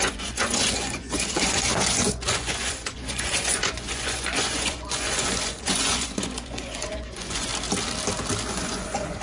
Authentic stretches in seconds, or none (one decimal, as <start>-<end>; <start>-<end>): 7.5-8.5